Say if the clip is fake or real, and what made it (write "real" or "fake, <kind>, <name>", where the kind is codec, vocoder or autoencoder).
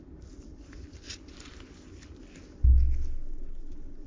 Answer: real